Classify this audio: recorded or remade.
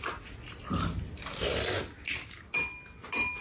recorded